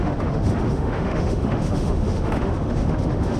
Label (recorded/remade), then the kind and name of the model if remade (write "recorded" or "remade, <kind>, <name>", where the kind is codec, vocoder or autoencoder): remade, autoencoder, DAC-VAE